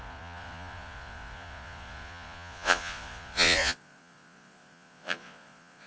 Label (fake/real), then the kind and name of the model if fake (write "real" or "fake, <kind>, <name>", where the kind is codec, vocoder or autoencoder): fake, vocoder, Vocos